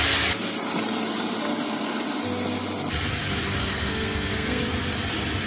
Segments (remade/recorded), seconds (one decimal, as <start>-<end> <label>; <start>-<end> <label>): 0.0-3.6 recorded; 3.6-4.6 remade; 4.6-5.5 recorded